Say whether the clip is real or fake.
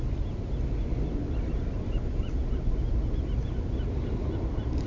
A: real